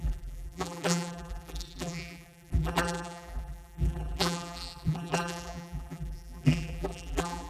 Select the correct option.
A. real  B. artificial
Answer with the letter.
B